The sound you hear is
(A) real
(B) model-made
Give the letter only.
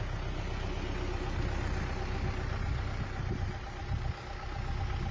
A